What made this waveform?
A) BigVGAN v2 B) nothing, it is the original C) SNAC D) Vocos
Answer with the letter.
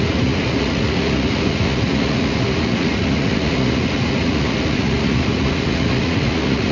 D